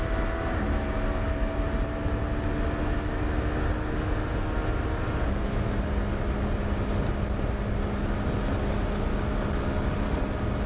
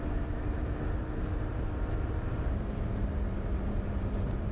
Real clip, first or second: first